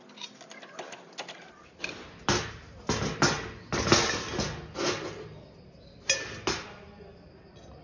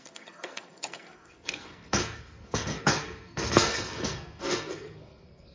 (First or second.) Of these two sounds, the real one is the first